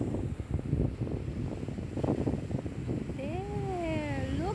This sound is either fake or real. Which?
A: real